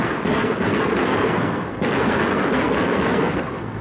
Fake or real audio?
fake